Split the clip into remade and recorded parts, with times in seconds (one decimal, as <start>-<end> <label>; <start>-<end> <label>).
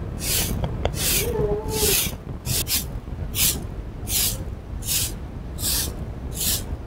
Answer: 0.0-6.9 recorded